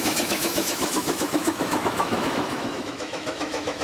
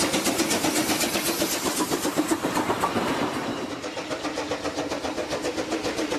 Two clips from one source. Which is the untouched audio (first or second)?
second